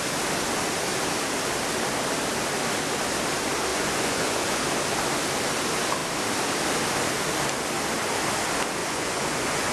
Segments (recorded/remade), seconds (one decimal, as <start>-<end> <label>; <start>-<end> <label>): 0.0-3.7 recorded; 3.7-4.6 remade; 4.6-8.8 recorded; 8.8-9.7 remade